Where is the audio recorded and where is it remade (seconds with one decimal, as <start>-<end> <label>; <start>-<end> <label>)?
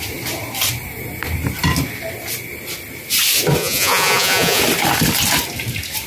0.0-3.6 recorded; 3.6-4.6 remade; 4.6-6.1 recorded